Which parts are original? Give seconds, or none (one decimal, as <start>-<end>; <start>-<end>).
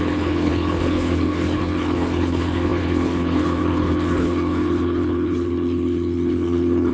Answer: none